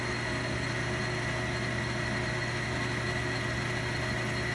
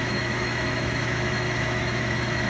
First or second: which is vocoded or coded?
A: second